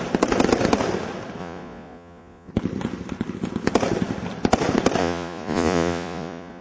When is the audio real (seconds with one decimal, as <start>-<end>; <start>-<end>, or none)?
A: 0.0-1.4; 2.5-5.0